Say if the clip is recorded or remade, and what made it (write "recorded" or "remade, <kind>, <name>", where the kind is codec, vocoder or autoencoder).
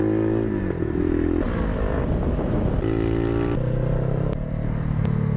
recorded